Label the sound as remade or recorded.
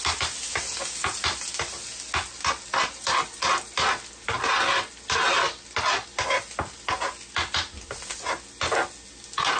recorded